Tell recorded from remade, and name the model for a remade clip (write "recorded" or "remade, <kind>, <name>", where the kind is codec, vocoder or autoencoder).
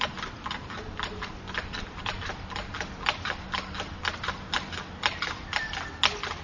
recorded